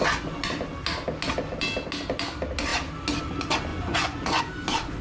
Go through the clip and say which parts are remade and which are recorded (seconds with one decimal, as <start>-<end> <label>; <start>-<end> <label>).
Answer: 0.0-3.7 recorded; 3.7-4.4 remade; 4.4-5.0 recorded

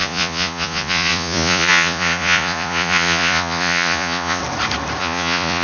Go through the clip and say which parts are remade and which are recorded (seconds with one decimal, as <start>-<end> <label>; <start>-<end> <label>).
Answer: 0.0-4.4 remade; 4.4-5.0 recorded; 5.0-5.6 remade

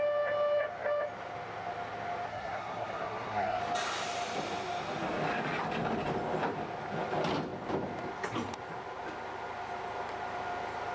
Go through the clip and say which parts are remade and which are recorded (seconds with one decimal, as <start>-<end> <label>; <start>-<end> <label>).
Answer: 0.0-2.3 recorded; 2.3-3.6 remade; 3.6-10.9 recorded

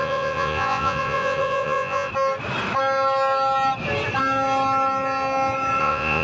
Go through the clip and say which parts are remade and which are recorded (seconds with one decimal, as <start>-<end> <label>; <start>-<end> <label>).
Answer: 0.0-2.1 remade; 2.1-5.8 recorded; 5.8-6.2 remade

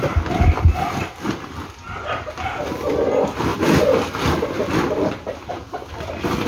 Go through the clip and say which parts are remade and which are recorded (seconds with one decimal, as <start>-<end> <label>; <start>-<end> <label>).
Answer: 0.0-6.5 recorded